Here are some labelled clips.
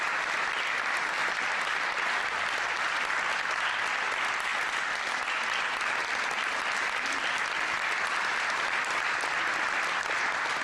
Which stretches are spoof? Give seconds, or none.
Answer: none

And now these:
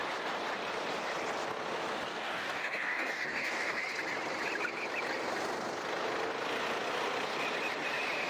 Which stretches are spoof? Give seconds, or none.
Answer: 2.1-3.8 (codec, DAC)

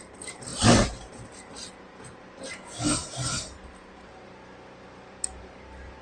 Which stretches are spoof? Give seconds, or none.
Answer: none